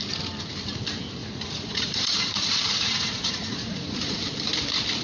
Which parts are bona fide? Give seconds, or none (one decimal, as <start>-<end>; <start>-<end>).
0.0-1.2; 4.2-5.0